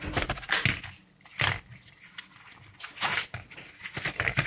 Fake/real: real